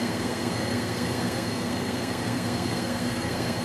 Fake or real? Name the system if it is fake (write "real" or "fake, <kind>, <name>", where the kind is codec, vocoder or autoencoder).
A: fake, codec, SNAC